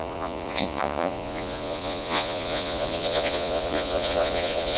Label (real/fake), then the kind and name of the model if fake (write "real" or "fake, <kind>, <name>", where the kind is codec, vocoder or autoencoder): fake, vocoder, Vocos